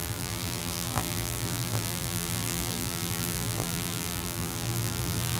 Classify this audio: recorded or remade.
remade